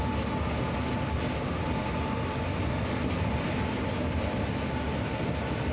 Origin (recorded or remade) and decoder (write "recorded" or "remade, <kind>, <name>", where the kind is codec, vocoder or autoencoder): recorded